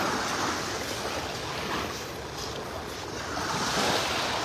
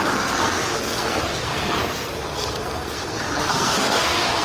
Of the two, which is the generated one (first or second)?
second